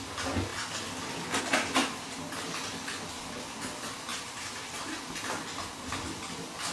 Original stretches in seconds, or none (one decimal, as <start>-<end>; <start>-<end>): 0.0-1.8; 2.5-4.1; 5.0-6.7